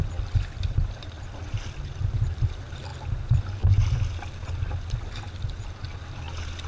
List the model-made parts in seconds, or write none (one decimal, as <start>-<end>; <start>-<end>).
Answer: none